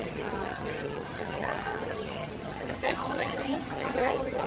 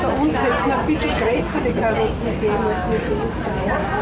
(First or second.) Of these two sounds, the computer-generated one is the first